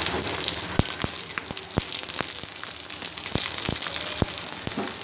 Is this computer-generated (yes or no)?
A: no